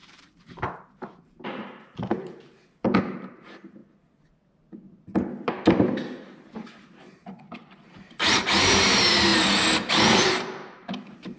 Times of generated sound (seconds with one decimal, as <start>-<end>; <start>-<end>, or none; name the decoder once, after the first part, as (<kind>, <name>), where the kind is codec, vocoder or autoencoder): 0.0-3.8 (vocoder, BigVGAN v2); 7.0-9.3; 9.9-11.4